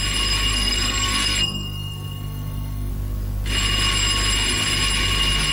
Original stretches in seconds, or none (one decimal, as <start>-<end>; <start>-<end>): 0.0-0.5; 2.9-5.5